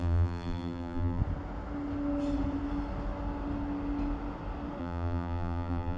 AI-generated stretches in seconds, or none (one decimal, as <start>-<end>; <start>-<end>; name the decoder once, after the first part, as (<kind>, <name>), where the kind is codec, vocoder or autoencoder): 0.0-1.2 (vocoder, BigVGAN v2); 4.8-6.0